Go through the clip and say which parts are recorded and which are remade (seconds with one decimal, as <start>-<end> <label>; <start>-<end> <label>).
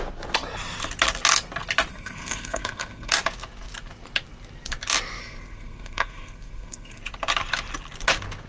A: 0.0-1.9 recorded; 1.9-3.1 remade; 3.1-5.2 recorded; 5.2-7.0 remade; 7.0-8.5 recorded